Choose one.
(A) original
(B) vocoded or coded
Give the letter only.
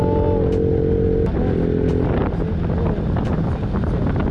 A